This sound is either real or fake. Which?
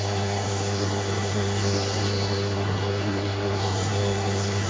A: fake